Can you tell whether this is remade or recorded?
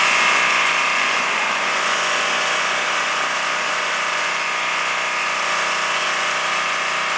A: remade